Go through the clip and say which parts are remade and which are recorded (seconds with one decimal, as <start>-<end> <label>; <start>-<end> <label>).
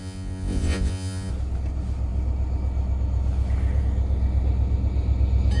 0.0-1.3 remade; 1.3-5.6 recorded